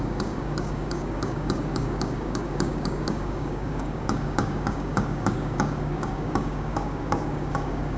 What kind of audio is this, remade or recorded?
remade